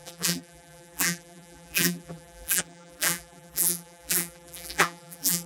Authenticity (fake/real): fake